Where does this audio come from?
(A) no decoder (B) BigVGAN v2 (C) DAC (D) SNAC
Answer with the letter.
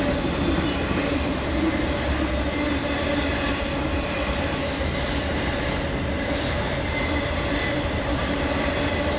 A